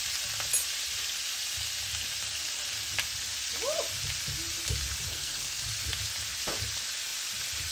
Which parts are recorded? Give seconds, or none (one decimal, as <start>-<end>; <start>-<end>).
0.0-5.1; 5.6-7.7